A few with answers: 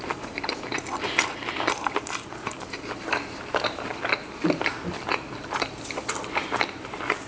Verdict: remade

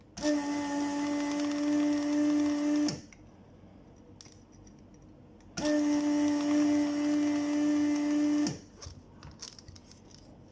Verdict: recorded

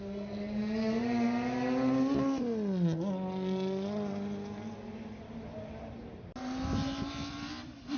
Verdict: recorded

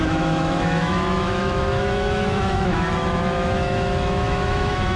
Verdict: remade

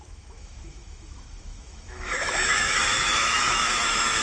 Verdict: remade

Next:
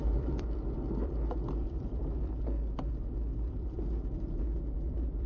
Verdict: remade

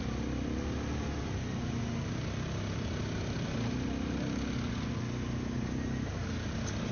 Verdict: recorded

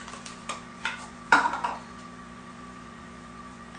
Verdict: remade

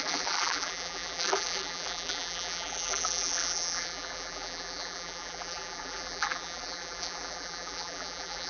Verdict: remade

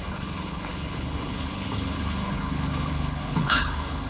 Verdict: remade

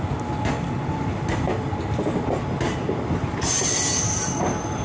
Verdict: recorded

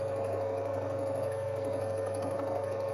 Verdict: remade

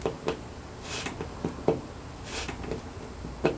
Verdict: recorded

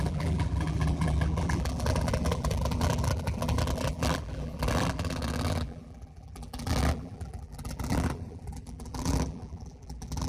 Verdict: remade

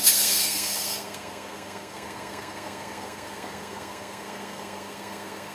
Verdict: remade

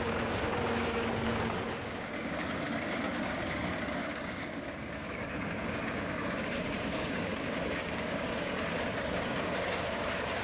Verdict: remade